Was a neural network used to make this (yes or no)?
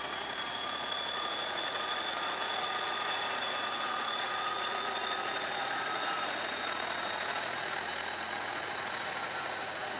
yes